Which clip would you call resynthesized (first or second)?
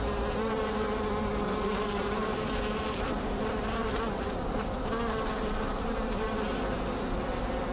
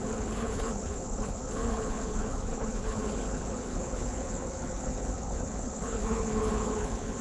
second